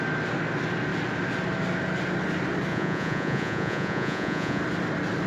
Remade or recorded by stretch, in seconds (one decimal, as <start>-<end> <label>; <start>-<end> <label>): 0.0-2.7 recorded; 2.7-4.6 remade; 4.6-5.3 recorded